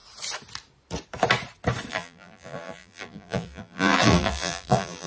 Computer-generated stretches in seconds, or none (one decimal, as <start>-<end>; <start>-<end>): 1.9-5.1